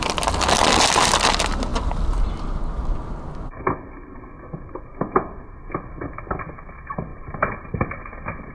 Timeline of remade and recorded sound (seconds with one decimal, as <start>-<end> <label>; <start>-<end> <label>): 0.0-7.1 recorded; 7.1-7.9 remade; 7.9-8.5 recorded